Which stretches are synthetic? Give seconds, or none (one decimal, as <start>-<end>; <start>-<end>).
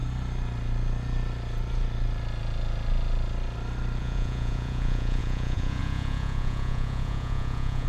4.0-7.9